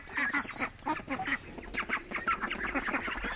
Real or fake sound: real